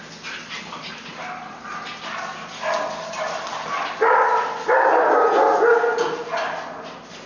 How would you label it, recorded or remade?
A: recorded